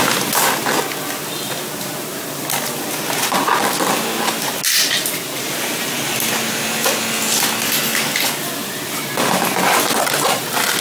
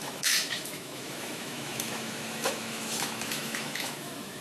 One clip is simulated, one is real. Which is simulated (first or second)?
second